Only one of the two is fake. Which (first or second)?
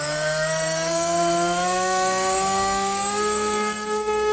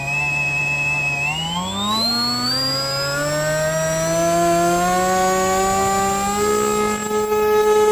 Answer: first